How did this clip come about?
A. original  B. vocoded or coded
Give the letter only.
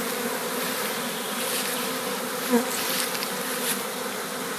A